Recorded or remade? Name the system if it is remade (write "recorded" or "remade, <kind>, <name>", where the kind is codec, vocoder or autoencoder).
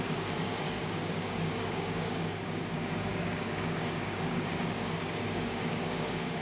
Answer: remade, codec, DAC